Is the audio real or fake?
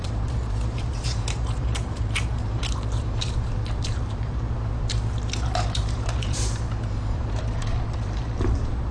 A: fake